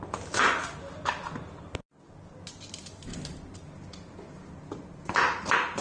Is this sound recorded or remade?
recorded